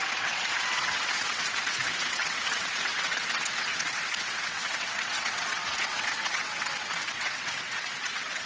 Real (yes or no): no